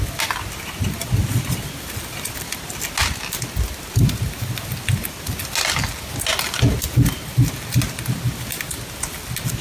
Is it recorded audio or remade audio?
recorded